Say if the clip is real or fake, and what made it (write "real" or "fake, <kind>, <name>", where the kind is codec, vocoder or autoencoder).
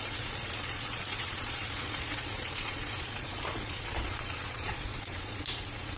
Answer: fake, vocoder, Vocos